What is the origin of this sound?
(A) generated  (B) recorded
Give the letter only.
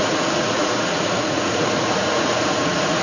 A